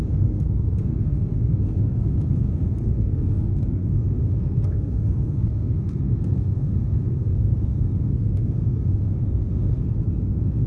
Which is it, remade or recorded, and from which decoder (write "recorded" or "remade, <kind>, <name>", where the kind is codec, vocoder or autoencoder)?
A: remade, codec, SNAC